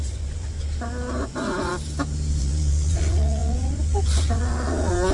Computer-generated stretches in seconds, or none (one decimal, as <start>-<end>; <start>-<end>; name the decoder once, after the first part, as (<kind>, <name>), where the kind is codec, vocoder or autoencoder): 0.0-0.6 (vocoder, Vocos); 1.2-1.7; 2.4-5.1